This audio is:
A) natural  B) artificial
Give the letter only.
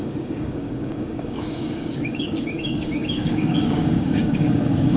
B